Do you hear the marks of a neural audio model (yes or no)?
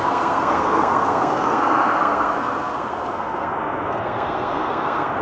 yes